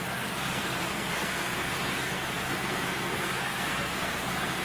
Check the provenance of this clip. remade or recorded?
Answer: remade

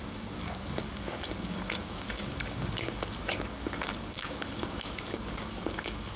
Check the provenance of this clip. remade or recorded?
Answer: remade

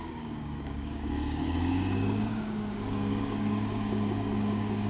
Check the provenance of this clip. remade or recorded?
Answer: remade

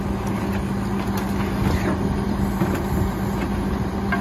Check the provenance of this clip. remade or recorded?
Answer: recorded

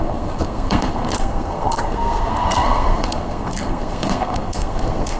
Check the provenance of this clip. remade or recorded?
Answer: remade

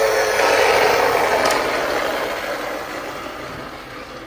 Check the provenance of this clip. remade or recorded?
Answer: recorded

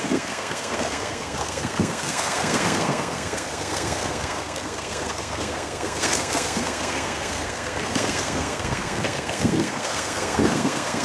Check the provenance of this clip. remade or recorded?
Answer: remade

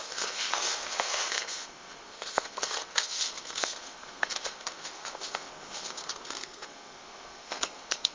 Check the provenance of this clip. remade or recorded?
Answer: remade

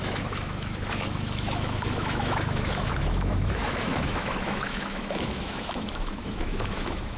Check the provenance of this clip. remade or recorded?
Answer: remade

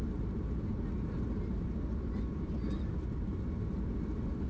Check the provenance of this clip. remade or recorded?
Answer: recorded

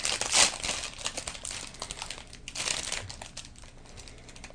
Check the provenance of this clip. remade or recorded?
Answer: recorded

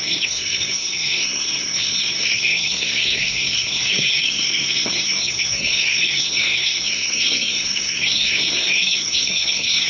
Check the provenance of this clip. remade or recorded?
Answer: remade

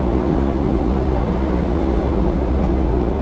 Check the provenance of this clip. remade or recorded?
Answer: remade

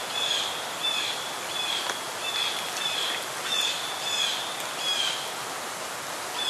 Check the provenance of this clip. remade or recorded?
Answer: recorded